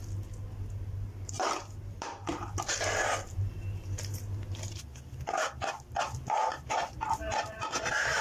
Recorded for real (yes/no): no